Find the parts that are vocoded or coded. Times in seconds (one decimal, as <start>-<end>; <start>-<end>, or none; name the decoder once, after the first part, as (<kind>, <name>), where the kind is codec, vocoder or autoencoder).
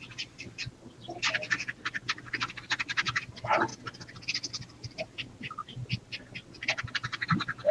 0.0-0.6 (vocoder, BigVGAN v2); 1.9-3.7; 4.5-5.8; 7.2-7.7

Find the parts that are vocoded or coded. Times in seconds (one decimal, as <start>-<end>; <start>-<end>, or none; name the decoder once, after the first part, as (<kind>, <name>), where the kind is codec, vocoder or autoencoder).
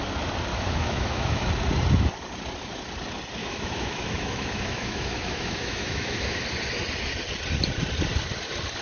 0.5-1.5 (autoencoder, DAC-VAE); 3.4-6.4